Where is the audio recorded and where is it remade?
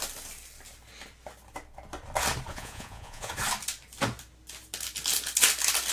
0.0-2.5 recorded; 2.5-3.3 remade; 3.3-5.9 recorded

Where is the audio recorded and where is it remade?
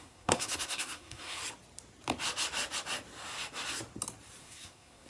0.0-1.4 remade; 1.4-4.4 recorded; 4.4-5.1 remade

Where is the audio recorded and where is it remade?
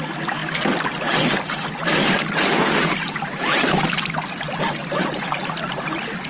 0.0-1.9 recorded; 1.9-5.7 remade; 5.7-6.3 recorded